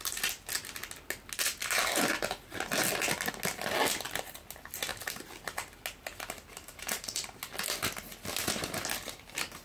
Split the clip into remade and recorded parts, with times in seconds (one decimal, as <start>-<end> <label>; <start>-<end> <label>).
0.0-9.6 recorded